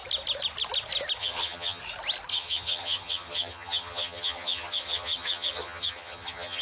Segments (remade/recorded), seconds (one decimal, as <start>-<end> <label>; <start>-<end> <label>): 0.0-1.2 recorded; 1.2-1.8 remade; 1.8-2.3 recorded; 2.3-6.6 remade